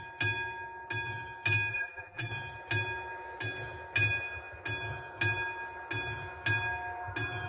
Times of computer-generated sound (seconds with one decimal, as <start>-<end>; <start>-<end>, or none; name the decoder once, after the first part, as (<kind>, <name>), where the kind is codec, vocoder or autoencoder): 1.7-2.3 (vocoder, BigVGAN v2)